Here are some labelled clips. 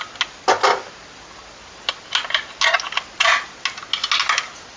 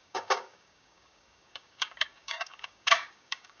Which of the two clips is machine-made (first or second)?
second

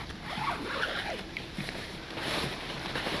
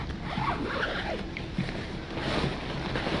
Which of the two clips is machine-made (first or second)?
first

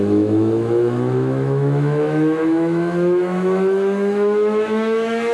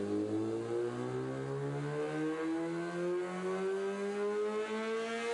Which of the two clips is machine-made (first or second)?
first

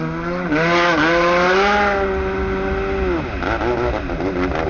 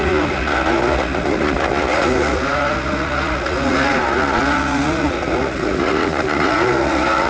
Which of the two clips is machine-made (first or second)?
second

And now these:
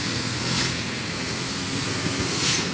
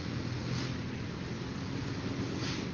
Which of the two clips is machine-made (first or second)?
first